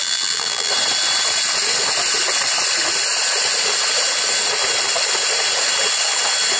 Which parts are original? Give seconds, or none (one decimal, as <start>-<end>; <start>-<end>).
0.7-6.6